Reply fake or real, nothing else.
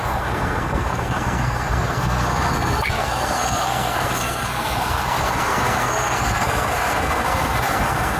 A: fake